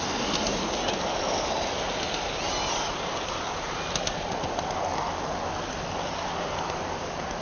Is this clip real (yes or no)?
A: yes